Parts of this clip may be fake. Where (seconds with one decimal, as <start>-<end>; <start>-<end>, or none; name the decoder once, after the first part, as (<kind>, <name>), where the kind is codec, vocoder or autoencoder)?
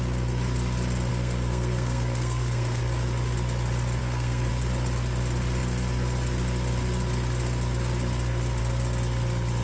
1.1-2.8 (codec, SNAC); 4.0-4.5